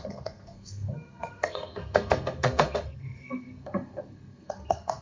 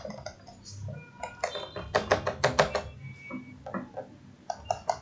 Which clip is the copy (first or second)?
first